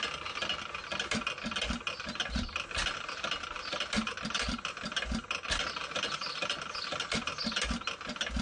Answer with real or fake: real